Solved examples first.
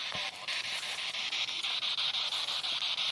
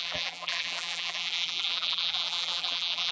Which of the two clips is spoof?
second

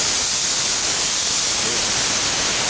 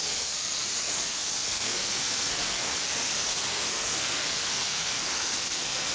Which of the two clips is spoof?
second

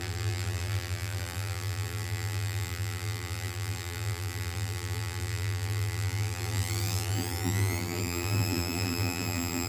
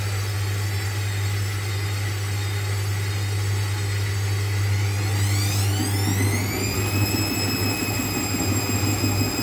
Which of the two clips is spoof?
first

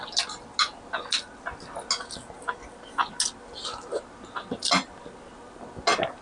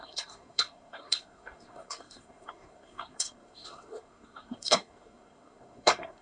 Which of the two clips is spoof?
second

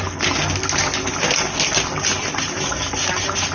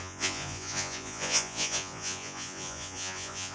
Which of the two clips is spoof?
second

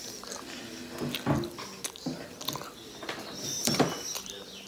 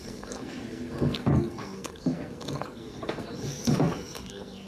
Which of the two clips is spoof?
second